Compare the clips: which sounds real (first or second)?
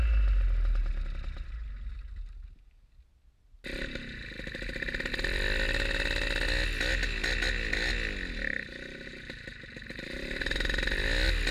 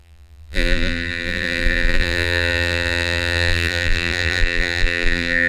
first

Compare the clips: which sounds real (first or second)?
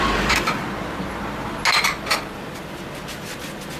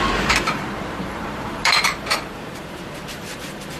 first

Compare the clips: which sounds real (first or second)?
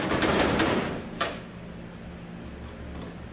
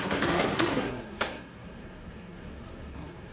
first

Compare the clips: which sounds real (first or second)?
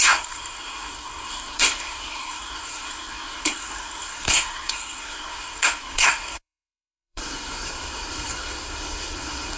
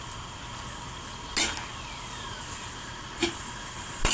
second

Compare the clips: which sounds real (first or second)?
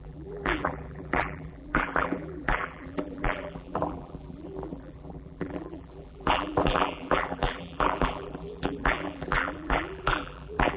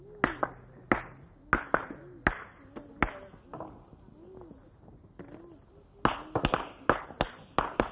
second